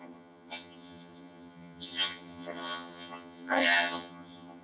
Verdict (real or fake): fake